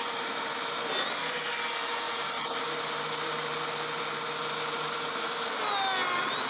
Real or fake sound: real